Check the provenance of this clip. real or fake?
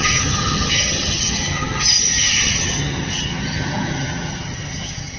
fake